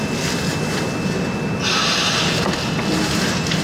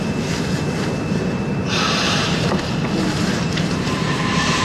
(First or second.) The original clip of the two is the first